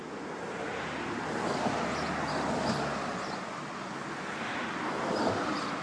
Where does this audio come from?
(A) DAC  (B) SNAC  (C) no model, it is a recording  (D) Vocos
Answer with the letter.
C